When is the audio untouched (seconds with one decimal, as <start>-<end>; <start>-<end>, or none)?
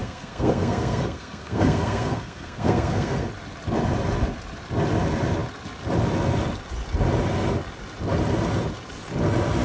3.3-9.6